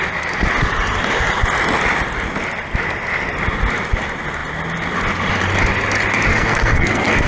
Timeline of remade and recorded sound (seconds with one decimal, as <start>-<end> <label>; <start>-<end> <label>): 0.0-6.3 recorded; 6.3-7.3 remade